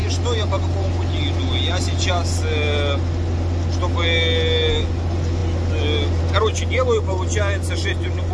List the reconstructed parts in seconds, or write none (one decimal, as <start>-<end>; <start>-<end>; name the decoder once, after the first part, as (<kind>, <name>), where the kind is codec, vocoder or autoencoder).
none

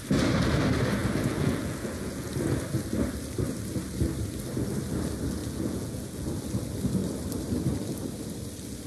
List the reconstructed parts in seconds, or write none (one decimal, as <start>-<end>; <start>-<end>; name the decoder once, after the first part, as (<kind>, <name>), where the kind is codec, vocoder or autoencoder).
1.0-2.3 (vocoder, Vocos); 5.4-6.3